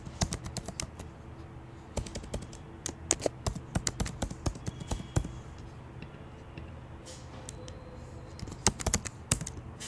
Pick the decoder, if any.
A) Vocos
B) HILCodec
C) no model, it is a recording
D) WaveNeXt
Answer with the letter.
C